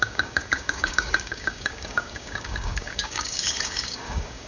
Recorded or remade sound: remade